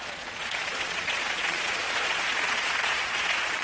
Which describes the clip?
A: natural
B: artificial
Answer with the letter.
B